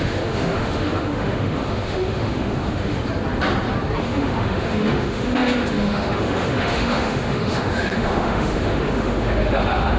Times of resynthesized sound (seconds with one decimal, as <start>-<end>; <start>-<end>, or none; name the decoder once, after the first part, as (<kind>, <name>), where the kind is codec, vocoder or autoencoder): 0.0-3.0 (autoencoder, DAC-VAE); 4.0-10.0